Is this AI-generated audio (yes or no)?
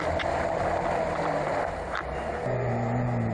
no